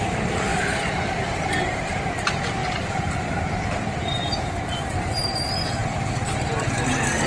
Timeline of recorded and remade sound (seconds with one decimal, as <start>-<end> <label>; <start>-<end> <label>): 0.0-0.5 recorded; 0.5-2.0 remade; 2.0-2.6 recorded; 2.6-5.3 remade; 5.3-7.3 recorded